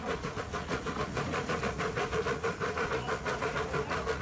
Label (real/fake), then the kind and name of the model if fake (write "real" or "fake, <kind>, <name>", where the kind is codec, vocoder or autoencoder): fake, vocoder, Vocos